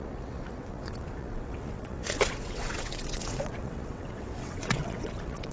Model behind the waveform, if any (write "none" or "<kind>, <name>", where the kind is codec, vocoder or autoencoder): vocoder, WaveNeXt